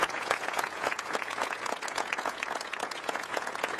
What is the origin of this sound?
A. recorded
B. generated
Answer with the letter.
B